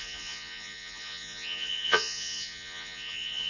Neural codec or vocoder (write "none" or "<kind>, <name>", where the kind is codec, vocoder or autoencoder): vocoder, Vocos